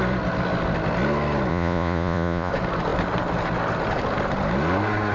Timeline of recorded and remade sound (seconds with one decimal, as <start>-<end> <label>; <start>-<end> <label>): 0.0-1.5 recorded; 1.5-2.5 remade; 2.5-5.1 recorded